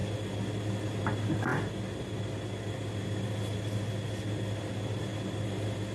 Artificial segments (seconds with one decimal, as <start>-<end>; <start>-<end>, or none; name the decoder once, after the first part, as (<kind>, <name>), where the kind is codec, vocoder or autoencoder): none